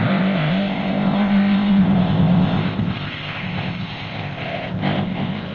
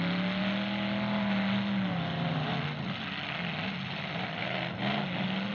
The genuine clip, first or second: second